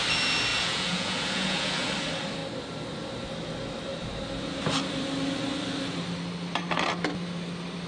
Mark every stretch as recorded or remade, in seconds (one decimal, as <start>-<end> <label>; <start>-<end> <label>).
0.0-0.5 recorded; 0.5-1.9 remade; 1.9-7.9 recorded